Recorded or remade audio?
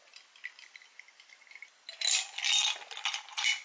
recorded